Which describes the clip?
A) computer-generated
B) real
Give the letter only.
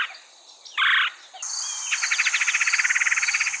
B